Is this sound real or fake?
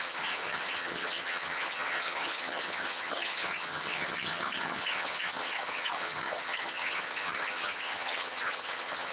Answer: fake